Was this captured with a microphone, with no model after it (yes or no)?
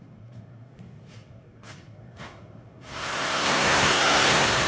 no